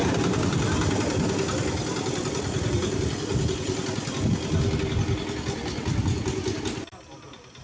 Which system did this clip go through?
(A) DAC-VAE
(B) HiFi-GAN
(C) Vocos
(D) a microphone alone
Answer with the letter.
D